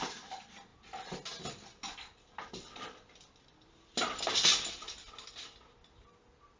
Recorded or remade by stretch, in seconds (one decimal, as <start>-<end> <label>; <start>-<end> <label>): 0.0-6.6 recorded